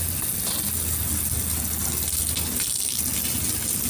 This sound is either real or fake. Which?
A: real